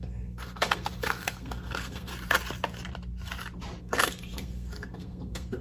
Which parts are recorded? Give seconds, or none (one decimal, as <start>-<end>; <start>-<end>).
2.1-3.8